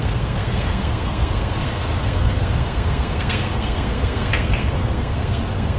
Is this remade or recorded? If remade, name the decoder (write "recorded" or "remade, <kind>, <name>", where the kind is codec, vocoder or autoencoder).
remade, codec, SNAC